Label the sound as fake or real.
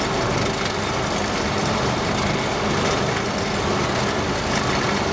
real